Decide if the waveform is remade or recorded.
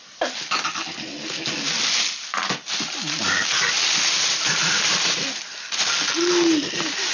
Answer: recorded